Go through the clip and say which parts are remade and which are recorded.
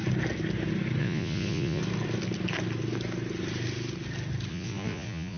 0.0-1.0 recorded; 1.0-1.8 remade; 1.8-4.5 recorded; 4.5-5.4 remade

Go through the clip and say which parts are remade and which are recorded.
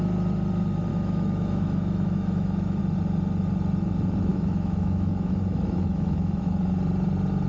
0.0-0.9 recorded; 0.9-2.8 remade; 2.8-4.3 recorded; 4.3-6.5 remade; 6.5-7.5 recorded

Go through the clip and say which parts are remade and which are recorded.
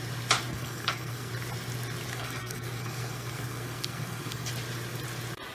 0.0-0.5 recorded; 0.5-1.3 remade; 1.3-2.1 recorded; 2.1-4.5 remade; 4.5-5.5 recorded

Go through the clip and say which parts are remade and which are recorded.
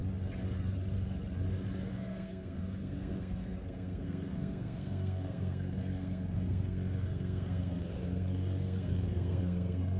0.0-1.9 recorded; 1.9-10.0 remade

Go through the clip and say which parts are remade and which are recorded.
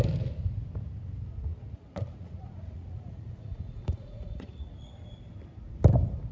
0.0-1.5 recorded; 1.5-5.3 remade; 5.3-6.3 recorded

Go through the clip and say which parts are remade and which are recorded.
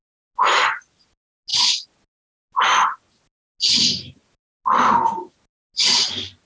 0.0-6.5 recorded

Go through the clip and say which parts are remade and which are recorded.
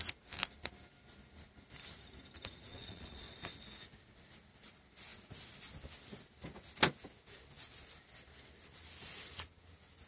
0.0-2.7 recorded; 2.7-3.5 remade; 3.5-10.1 recorded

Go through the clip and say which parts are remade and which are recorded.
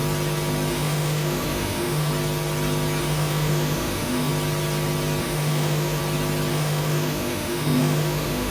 0.0-0.7 recorded; 0.7-2.1 remade; 2.1-3.0 recorded; 3.0-4.3 remade; 4.3-5.2 recorded; 5.2-6.0 remade; 6.0-6.5 recorded; 6.5-8.5 remade